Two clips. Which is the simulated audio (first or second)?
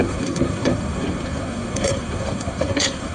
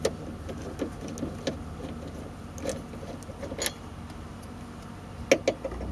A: first